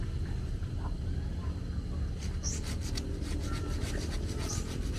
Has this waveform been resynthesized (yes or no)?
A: no